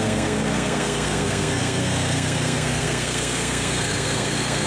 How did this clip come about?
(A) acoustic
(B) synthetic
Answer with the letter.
B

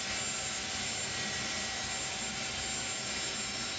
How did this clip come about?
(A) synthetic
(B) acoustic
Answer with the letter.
B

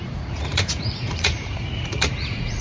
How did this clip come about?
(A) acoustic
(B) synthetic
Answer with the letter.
B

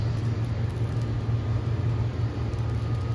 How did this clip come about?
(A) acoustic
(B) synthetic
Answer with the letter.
A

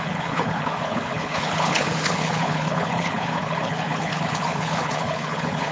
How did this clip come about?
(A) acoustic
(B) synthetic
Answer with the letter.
B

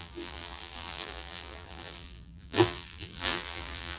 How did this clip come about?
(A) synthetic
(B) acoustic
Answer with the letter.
A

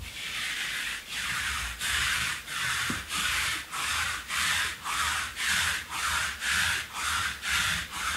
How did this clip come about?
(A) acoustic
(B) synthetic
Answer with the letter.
B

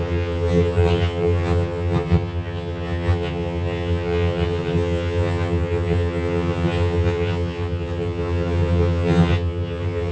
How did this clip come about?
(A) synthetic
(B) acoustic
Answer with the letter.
A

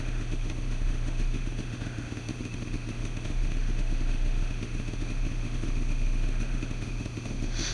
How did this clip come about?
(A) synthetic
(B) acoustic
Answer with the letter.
A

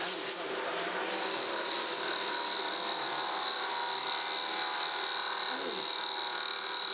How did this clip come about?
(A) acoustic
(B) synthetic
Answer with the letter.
A